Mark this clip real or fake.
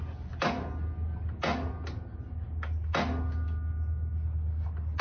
real